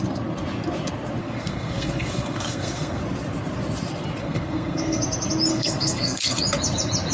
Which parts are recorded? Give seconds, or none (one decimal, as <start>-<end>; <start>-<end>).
0.0-1.2; 3.0-4.2; 5.0-5.5; 6.4-7.1